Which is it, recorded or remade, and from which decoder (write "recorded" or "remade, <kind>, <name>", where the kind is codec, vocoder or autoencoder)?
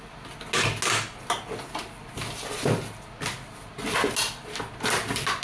recorded